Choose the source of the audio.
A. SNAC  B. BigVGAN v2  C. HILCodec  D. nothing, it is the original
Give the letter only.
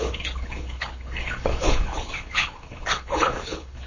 C